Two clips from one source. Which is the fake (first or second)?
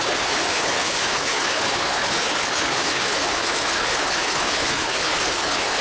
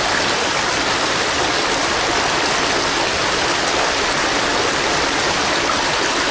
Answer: first